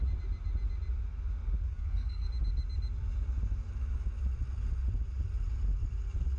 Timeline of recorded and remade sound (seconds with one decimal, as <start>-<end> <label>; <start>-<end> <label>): 0.0-1.7 recorded; 1.7-2.3 remade; 2.3-6.4 recorded